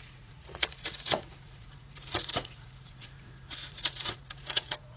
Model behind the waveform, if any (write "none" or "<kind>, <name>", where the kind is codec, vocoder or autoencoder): vocoder, Vocos